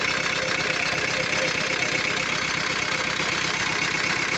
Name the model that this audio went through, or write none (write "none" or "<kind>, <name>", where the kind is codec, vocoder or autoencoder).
none